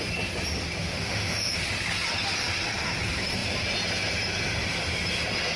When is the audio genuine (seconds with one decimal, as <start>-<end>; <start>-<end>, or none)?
0.0-0.8; 1.5-5.6